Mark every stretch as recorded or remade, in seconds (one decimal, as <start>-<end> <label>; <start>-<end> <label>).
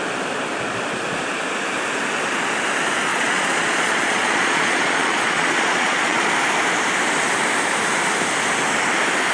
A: 0.0-3.1 recorded; 3.1-6.3 remade; 6.3-9.3 recorded